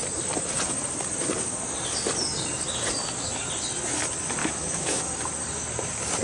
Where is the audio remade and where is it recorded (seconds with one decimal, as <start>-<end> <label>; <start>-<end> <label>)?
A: 0.0-4.4 recorded; 4.4-5.0 remade; 5.0-6.2 recorded